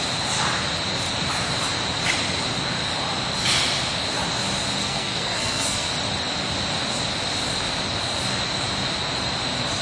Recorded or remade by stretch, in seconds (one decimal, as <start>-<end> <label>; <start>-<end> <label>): 0.0-4.8 recorded; 4.8-5.9 remade; 5.9-9.8 recorded